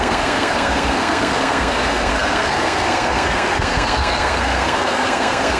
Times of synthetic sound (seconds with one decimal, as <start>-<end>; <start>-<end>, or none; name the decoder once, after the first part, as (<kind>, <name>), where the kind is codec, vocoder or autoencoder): 0.0-5.6 (codec, SNAC)